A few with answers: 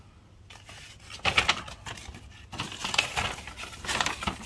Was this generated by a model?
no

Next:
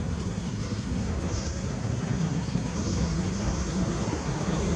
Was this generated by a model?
yes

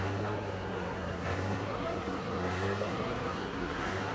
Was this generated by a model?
yes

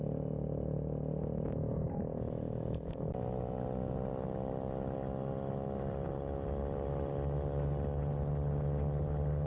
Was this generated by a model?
no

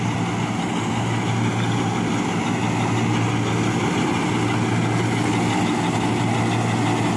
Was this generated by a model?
no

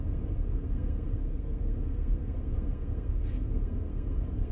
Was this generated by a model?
yes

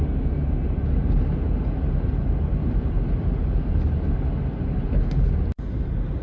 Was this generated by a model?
no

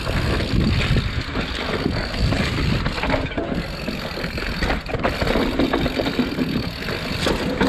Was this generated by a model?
no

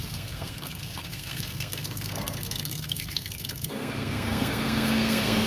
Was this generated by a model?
yes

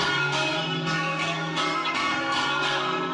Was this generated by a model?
yes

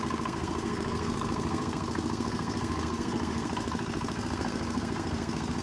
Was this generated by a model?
yes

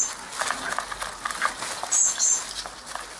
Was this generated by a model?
no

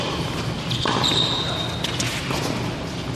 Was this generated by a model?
no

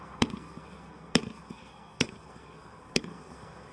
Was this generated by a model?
yes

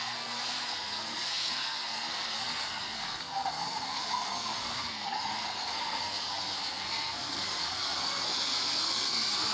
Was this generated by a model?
yes